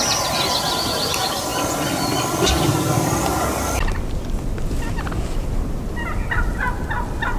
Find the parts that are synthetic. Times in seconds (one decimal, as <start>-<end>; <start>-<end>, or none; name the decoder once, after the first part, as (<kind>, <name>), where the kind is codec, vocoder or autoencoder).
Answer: none